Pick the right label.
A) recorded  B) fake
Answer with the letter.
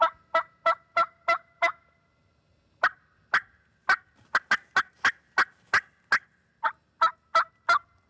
A